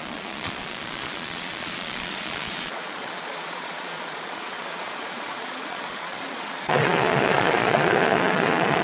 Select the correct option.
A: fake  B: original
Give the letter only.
A